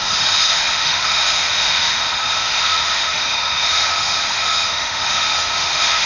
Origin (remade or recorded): remade